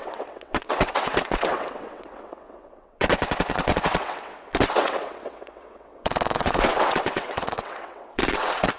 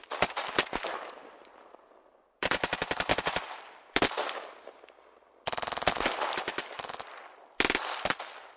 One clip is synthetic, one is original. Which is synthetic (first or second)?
first